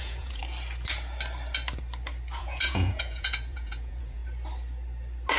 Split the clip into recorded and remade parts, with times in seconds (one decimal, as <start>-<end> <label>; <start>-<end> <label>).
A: 0.0-0.4 remade; 0.4-2.4 recorded; 2.4-4.2 remade; 4.2-5.4 recorded